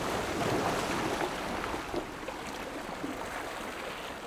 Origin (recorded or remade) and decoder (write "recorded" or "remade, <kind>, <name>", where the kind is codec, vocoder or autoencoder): recorded